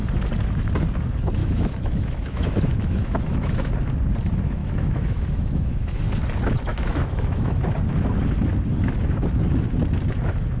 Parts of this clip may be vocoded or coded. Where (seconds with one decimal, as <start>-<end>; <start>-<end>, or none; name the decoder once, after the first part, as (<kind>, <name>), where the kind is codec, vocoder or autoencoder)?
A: 1.4-3.7 (autoencoder, DAC-VAE); 4.6-6.1; 6.7-7.6

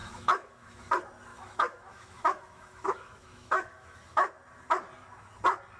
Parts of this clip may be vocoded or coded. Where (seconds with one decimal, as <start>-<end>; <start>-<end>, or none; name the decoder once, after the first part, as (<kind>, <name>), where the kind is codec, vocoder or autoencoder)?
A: 0.0-0.9 (autoencoder, DAC-VAE); 1.3-4.3